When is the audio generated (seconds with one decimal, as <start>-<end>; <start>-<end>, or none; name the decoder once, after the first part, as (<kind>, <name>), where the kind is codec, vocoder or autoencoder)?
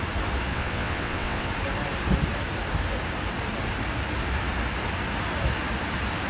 0.5-1.5 (vocoder, WaveNeXt)